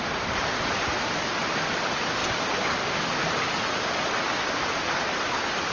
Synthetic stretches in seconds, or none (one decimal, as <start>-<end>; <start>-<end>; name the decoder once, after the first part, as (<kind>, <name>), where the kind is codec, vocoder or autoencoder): none